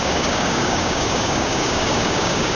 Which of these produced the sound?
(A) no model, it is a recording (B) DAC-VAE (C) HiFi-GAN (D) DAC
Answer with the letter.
D